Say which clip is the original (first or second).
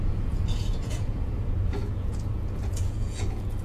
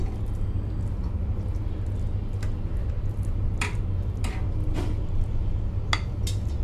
second